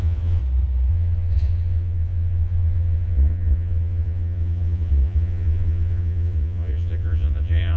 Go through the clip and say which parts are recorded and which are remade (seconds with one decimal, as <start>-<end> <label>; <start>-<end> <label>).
0.0-0.4 remade; 0.4-0.9 recorded; 0.9-7.8 remade